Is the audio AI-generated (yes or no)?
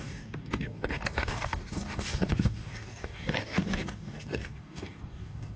yes